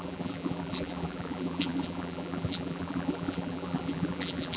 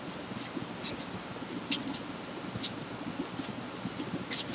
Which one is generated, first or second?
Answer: first